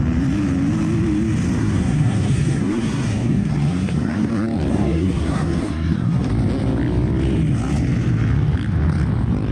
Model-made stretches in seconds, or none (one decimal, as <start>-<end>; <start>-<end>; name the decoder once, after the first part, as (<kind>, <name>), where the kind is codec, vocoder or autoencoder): 1.6-4.3 (codec, SNAC); 4.7-6.3